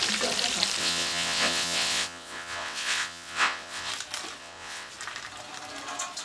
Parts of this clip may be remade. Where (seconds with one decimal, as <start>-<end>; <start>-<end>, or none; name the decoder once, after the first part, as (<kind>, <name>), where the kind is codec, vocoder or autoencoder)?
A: 0.8-3.9 (vocoder, WaveNeXt); 4.4-4.9